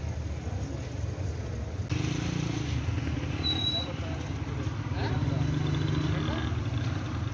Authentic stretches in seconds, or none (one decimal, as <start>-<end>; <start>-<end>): 0.0-7.3